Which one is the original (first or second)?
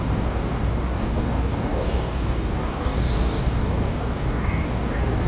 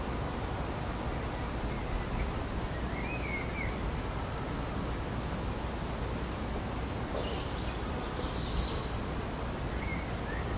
second